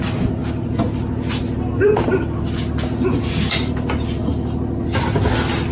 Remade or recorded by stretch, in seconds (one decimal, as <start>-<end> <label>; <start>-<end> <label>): 0.0-5.7 recorded